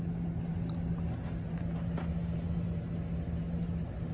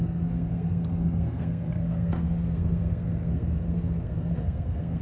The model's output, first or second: second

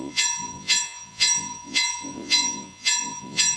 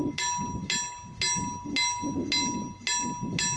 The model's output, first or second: first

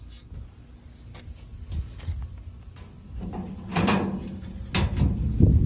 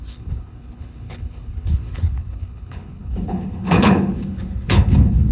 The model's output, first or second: second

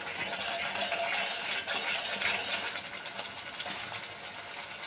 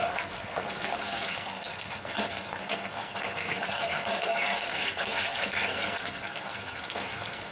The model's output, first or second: second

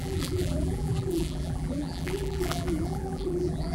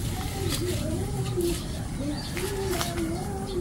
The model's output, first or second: first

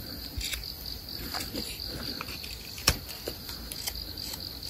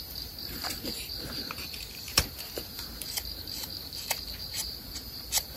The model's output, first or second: second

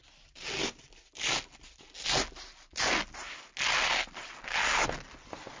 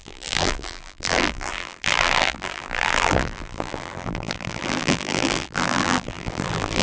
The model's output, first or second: second